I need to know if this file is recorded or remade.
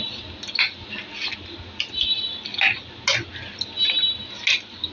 recorded